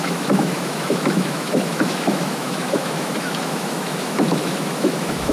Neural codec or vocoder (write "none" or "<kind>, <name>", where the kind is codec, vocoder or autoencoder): autoencoder, DAC-VAE